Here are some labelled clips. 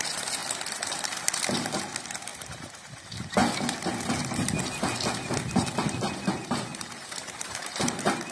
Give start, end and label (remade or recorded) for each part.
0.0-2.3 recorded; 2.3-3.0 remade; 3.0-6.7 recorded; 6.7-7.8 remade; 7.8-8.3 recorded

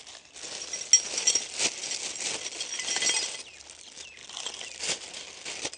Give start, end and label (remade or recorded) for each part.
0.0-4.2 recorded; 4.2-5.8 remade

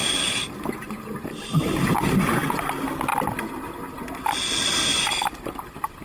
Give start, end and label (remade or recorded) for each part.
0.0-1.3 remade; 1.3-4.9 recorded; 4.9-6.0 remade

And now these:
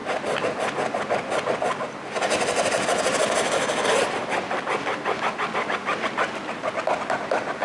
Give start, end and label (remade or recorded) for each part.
0.0-7.6 recorded

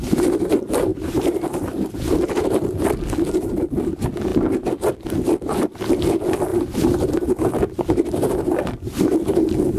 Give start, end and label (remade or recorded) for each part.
0.0-0.9 recorded; 0.9-2.6 remade; 2.6-6.5 recorded; 6.5-7.1 remade; 7.1-9.8 recorded

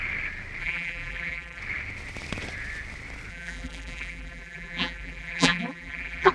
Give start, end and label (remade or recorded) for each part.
0.0-0.6 recorded; 0.6-1.6 remade; 1.6-3.3 recorded; 3.3-6.3 remade

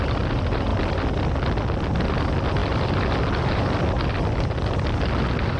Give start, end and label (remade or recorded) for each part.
0.0-5.6 recorded